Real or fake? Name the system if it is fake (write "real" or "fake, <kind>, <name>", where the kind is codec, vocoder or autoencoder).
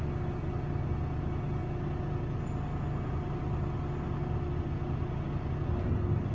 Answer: real